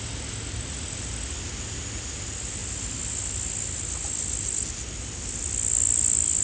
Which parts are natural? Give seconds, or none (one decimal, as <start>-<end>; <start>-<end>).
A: 0.0-6.4